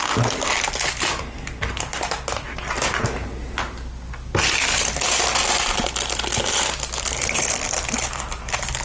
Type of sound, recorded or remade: recorded